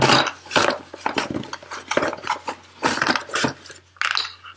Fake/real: real